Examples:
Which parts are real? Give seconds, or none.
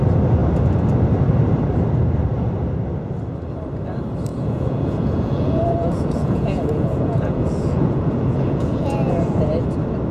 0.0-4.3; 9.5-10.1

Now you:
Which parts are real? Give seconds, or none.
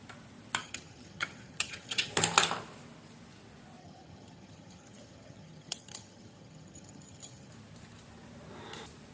0.0-0.6; 2.1-3.8; 7.5-9.1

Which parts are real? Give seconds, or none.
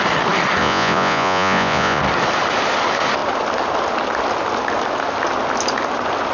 0.0-0.6; 2.0-6.3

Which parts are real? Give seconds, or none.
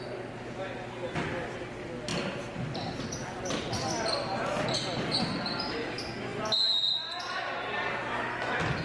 0.0-8.8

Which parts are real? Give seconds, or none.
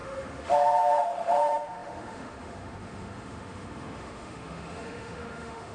none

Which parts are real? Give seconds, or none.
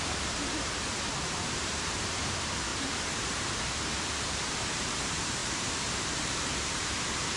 none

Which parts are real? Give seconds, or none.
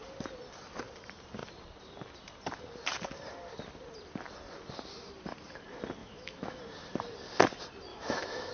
0.0-6.0; 6.6-7.9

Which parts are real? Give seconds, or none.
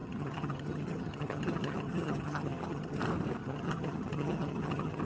3.0-3.4